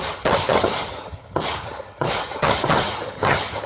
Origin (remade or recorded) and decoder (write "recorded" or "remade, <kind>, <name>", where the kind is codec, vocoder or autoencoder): remade, vocoder, HiFi-GAN